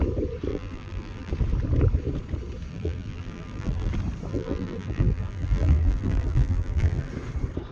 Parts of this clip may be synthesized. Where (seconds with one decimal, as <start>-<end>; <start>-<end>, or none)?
0.5-1.3; 2.7-3.9; 4.3-7.1